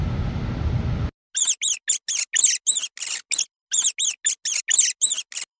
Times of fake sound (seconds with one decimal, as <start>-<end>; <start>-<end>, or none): none